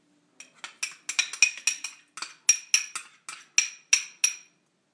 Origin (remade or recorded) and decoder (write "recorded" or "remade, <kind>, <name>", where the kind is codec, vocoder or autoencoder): recorded